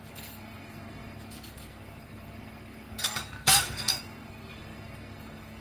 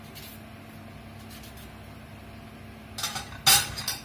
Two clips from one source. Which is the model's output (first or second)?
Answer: first